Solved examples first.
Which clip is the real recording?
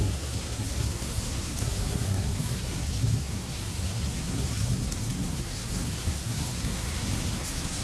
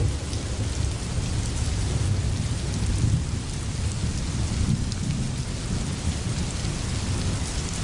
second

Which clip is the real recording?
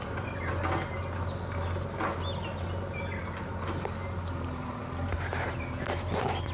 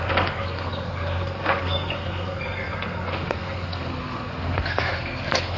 first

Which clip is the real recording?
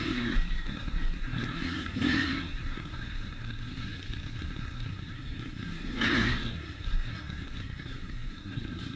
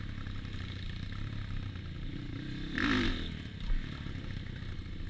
second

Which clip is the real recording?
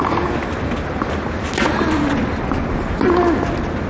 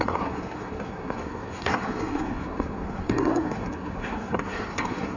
first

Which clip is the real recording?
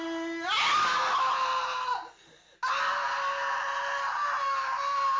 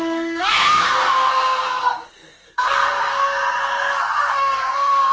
first